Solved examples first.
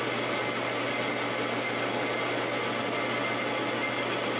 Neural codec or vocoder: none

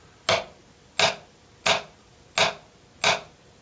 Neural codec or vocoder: none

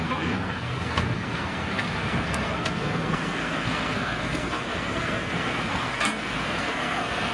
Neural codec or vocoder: codec, SNAC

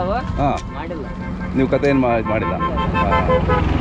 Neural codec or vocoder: none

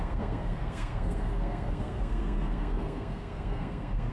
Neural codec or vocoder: codec, SNAC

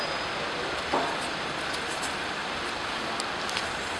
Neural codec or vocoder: none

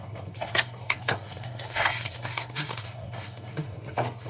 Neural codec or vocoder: codec, SNAC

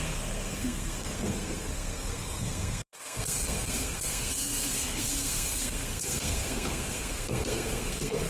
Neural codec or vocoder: codec, SNAC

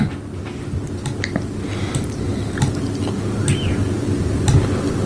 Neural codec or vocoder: none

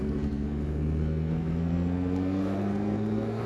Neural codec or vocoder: codec, SNAC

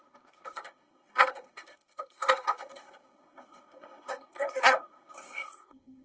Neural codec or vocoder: codec, SNAC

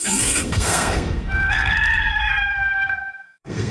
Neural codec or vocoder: codec, SNAC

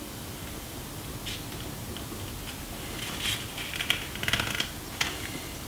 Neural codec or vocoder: none